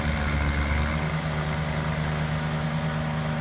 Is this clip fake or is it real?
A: real